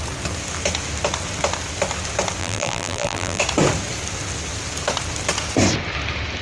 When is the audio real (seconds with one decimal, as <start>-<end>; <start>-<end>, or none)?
0.0-2.4; 3.4-6.4